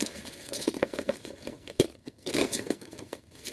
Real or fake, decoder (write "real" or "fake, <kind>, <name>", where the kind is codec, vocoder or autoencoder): fake, codec, SNAC